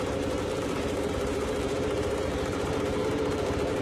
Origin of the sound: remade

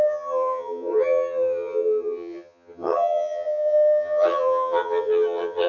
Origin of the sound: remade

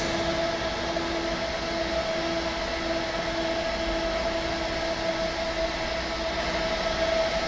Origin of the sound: recorded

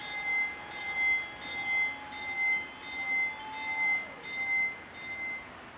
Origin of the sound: recorded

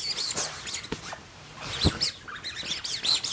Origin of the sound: recorded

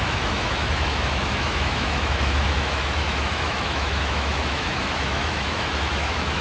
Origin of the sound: remade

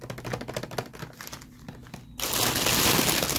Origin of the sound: recorded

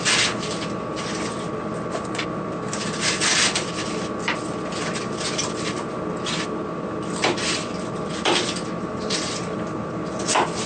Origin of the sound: recorded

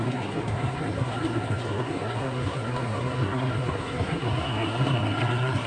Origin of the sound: remade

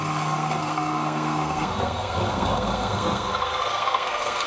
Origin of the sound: remade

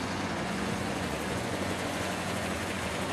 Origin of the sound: remade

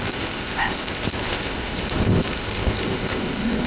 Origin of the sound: remade